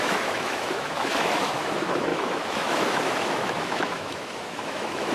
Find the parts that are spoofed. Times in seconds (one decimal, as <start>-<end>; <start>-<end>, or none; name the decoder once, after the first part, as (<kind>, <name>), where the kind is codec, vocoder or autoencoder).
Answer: 0.0-5.1 (autoencoder, DAC-VAE)